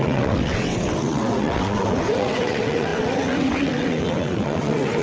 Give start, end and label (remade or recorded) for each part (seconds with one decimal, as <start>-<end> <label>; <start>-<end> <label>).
0.0-5.0 remade